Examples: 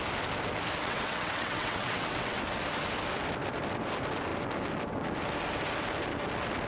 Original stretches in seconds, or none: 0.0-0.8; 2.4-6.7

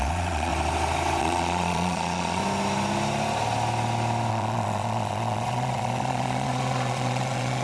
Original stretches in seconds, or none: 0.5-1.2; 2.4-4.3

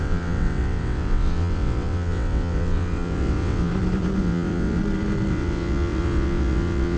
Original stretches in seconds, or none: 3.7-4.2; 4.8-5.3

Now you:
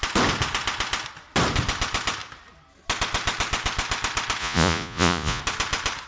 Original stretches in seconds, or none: 0.0-4.4; 5.4-6.1

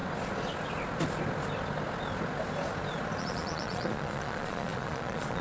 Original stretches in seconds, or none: 0.0-3.2

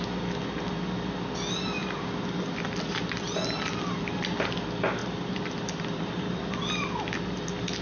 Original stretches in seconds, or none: 0.0-1.8; 3.3-5.0; 6.4-7.8

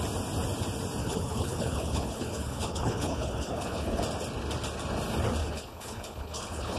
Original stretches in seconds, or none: 0.0-1.0; 4.0-5.4